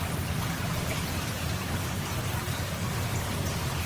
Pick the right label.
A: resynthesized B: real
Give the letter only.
A